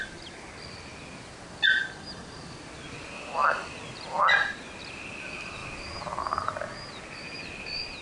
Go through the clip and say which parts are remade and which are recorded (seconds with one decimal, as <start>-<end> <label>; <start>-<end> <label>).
0.0-5.6 remade; 5.6-6.2 recorded; 6.2-8.0 remade